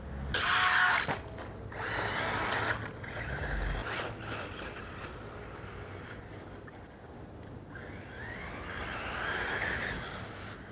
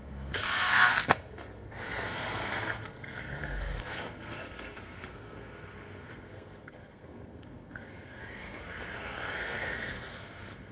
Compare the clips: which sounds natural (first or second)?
first